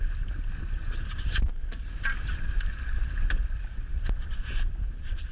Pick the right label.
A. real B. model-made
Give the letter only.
A